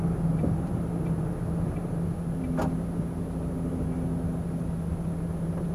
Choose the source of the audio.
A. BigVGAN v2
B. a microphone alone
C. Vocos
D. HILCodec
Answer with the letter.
B